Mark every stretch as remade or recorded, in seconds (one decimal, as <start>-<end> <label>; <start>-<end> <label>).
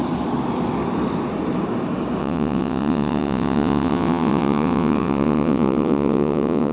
0.0-2.2 recorded; 2.2-6.7 remade